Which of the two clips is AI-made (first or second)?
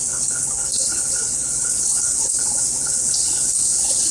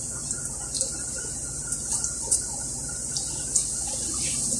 first